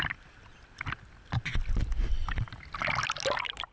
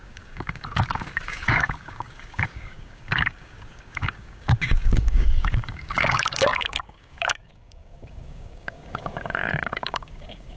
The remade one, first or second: second